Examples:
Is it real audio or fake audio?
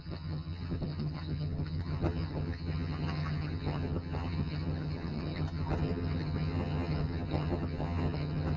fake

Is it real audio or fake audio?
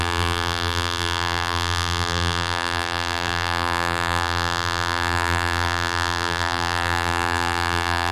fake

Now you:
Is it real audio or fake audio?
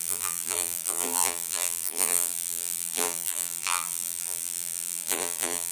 fake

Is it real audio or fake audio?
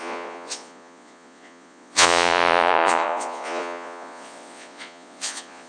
fake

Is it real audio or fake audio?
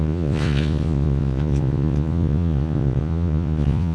fake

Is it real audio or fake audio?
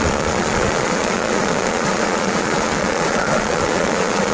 fake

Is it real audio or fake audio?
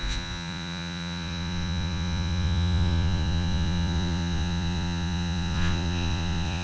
fake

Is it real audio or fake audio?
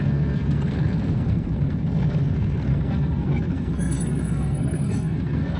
fake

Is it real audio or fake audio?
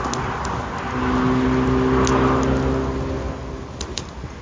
real